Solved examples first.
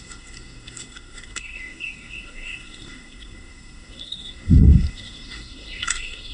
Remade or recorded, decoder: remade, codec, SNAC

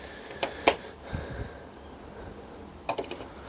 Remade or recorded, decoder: recorded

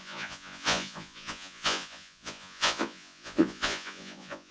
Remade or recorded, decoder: remade, vocoder, Vocos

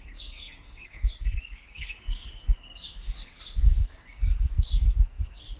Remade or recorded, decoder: remade, codec, SNAC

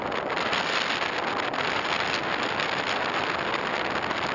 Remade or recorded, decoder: recorded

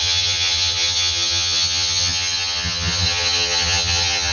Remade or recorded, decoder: remade, vocoder, HiFi-GAN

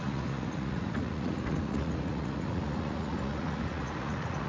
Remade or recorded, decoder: remade, vocoder, Vocos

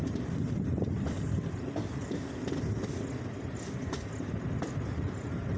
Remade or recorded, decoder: remade, vocoder, BigVGAN v2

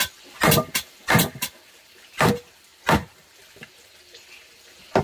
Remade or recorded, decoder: remade, vocoder, BigVGAN v2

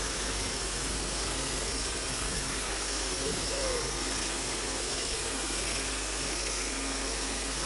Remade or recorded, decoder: remade, codec, SNAC